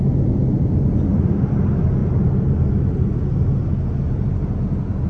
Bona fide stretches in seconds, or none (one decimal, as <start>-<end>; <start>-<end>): 0.0-5.1